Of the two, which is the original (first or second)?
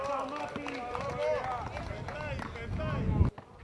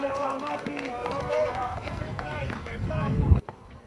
first